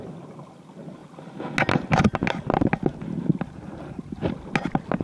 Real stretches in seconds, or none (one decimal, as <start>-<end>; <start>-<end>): 0.0-5.0